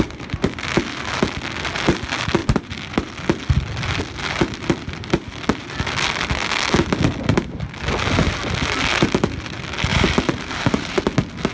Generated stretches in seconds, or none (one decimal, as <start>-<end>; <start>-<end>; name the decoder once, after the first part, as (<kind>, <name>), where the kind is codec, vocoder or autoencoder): 2.4-4.0 (vocoder, BigVGAN v2); 9.9-11.0